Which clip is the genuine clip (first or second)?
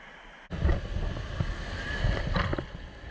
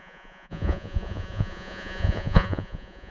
first